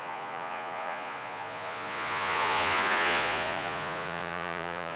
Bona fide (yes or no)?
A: no